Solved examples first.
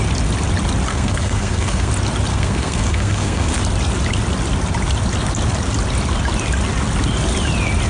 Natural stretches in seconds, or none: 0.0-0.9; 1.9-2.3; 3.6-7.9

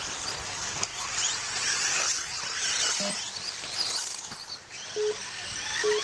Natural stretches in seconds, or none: 0.0-6.0

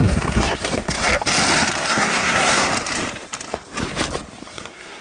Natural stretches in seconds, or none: 1.1-1.9; 2.7-4.4

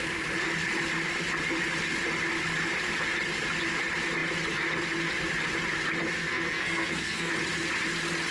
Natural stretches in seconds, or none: 0.0-6.2; 7.3-8.3